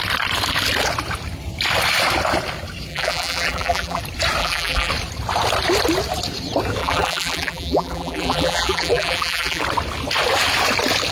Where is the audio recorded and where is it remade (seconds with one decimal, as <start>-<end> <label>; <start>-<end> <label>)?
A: 0.0-2.9 recorded; 2.9-4.0 remade; 4.0-4.4 recorded; 4.4-4.9 remade; 4.9-6.8 recorded; 6.8-9.6 remade; 9.6-11.1 recorded